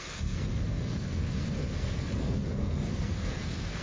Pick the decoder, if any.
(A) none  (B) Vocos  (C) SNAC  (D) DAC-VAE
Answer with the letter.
C